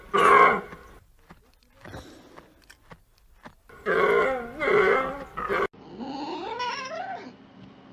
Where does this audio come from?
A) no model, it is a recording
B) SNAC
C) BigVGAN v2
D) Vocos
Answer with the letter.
A